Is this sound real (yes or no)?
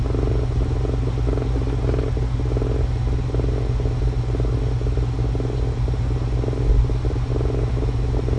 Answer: yes